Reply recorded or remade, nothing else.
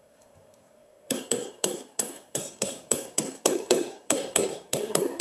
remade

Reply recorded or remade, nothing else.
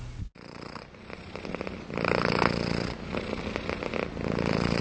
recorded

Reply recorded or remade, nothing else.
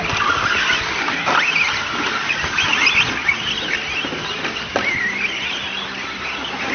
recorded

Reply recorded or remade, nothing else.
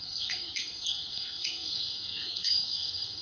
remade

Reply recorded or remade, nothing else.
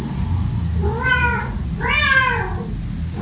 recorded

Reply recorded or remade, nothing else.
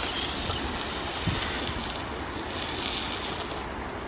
recorded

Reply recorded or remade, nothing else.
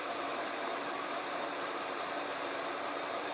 remade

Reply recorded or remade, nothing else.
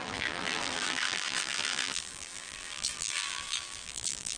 remade